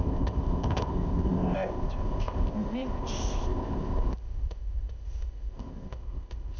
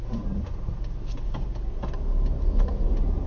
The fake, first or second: first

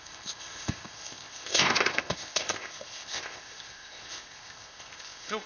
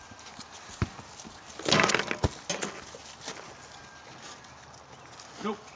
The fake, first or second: first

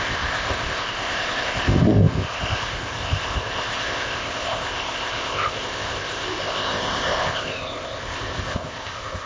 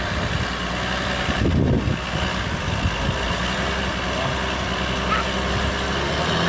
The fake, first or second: first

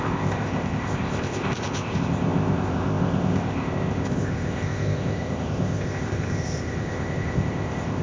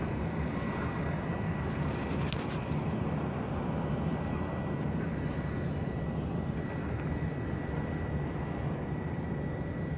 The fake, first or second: first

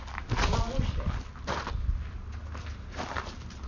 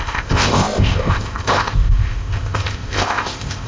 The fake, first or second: second